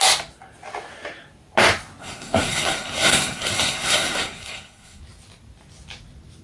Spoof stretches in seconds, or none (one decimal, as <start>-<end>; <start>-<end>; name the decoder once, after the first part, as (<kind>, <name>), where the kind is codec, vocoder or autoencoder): 2.0-5.0 (codec, SNAC)